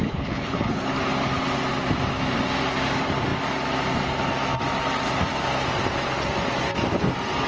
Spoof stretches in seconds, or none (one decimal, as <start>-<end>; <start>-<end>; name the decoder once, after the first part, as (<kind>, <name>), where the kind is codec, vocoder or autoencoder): 0.0-0.9 (codec, HILCodec)